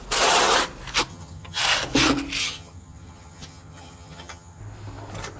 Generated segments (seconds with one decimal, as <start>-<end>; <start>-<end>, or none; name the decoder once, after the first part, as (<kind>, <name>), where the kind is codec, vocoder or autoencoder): 1.1-1.6 (vocoder, HiFi-GAN); 2.4-4.6